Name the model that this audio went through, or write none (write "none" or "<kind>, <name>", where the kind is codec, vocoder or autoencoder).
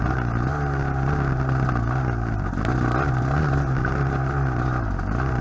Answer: none